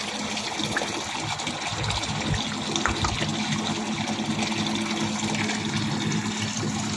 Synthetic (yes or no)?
no